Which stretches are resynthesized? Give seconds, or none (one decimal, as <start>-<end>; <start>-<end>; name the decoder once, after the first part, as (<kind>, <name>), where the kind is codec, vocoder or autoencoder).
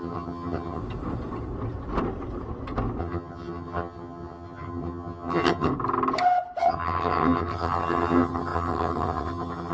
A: 0.0-0.8 (vocoder, HiFi-GAN); 3.0-5.7; 6.6-9.7